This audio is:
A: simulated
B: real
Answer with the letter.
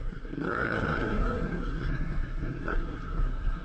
A